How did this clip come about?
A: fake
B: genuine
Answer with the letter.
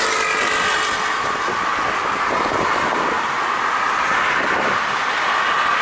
B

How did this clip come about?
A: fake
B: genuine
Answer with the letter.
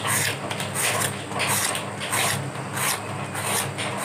B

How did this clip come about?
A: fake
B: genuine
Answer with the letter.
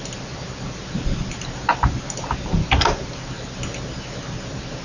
B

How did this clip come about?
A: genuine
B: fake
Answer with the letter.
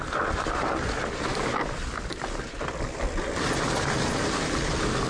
A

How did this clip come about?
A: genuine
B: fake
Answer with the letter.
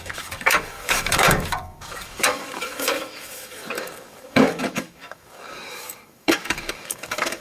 B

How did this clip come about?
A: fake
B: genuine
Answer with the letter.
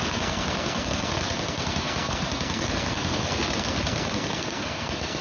A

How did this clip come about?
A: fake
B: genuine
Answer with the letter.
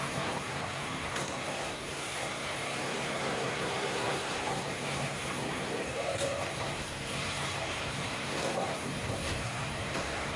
A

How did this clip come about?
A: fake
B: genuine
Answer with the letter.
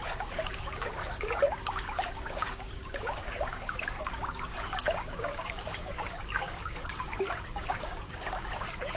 A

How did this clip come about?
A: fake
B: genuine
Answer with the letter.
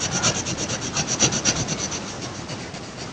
B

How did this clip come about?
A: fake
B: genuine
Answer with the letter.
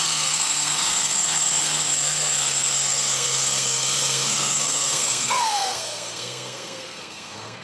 A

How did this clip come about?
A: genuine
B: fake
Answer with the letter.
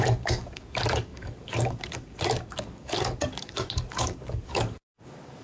B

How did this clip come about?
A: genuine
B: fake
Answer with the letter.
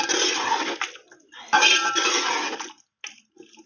A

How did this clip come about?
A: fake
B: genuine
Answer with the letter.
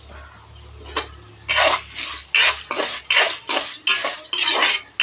B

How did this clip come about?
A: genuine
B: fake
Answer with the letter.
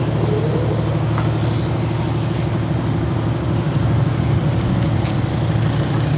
A